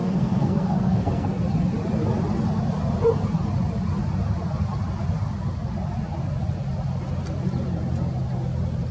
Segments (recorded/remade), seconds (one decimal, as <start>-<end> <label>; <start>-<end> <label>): 0.0-1.4 remade; 1.4-8.9 recorded